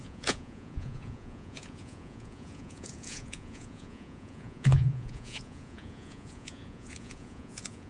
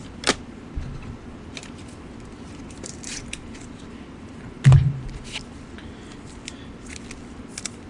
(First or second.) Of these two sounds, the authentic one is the second